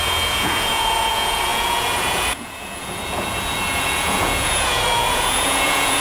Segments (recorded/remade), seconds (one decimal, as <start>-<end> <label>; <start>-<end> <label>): 0.0-6.0 remade